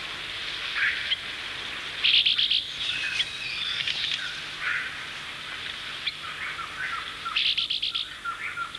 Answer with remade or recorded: recorded